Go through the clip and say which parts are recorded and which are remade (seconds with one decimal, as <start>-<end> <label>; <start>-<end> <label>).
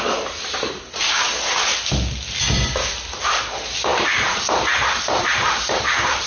0.0-3.9 recorded; 3.9-6.3 remade